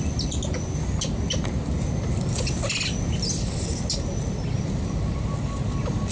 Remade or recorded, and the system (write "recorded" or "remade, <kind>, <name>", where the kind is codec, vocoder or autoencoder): recorded